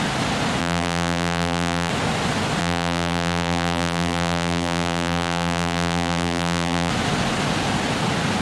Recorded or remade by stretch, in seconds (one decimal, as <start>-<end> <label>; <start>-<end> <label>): 0.0-0.6 recorded; 0.6-1.9 remade; 1.9-2.6 recorded; 2.6-6.9 remade; 6.9-8.4 recorded